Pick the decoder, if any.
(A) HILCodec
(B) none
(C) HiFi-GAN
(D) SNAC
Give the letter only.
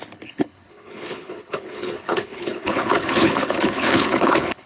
A